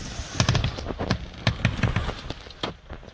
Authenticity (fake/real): real